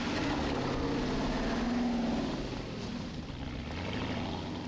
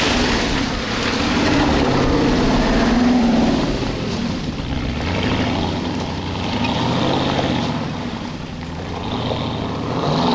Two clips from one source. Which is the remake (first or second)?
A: second